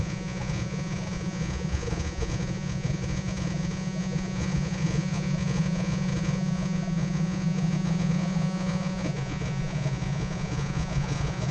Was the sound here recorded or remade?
remade